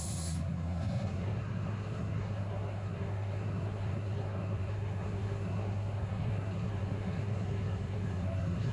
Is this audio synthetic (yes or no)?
yes